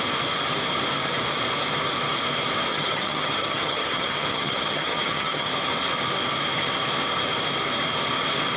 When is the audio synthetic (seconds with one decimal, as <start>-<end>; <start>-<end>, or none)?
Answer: 2.7-5.5